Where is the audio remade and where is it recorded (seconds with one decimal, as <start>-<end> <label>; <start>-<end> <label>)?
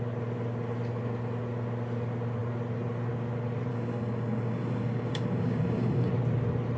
0.0-3.7 recorded; 3.7-6.1 remade; 6.1-6.8 recorded